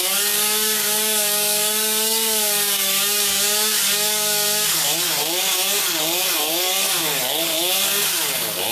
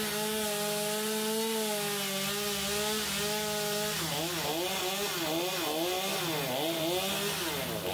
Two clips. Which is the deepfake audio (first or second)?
first